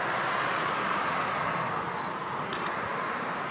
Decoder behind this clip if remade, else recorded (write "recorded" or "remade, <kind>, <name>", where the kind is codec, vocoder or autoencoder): recorded